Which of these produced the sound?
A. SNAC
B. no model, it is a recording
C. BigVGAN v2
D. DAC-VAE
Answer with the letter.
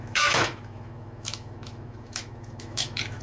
D